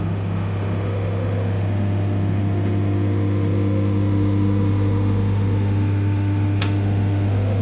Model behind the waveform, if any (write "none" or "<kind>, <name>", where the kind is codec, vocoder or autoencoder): autoencoder, DAC-VAE